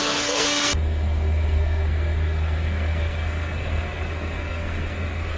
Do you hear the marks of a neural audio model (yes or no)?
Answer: yes